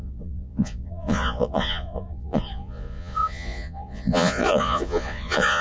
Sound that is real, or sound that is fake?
fake